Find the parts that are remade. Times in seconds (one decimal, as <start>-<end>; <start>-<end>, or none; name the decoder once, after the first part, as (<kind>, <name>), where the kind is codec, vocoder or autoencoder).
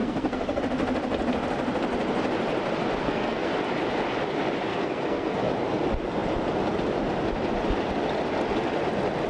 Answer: 0.0-0.6 (codec, SNAC); 3.0-3.5; 4.7-5.5